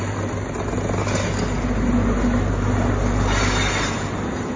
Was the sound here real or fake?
real